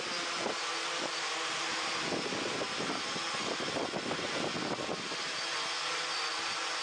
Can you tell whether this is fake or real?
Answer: real